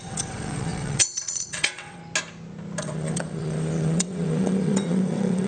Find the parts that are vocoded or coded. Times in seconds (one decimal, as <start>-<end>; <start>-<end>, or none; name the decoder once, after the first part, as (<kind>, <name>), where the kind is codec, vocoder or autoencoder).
0.0-2.0 (vocoder, WaveNeXt); 2.8-5.5